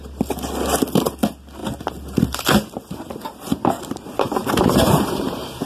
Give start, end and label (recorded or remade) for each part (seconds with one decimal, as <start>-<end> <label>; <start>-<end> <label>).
0.0-5.7 remade

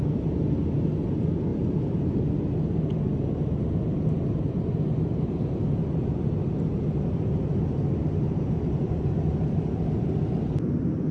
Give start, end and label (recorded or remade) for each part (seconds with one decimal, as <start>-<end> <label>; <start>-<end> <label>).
0.0-1.5 recorded; 1.5-2.3 remade; 2.3-11.1 recorded